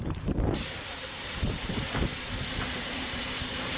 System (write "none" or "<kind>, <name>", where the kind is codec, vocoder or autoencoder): vocoder, BigVGAN v2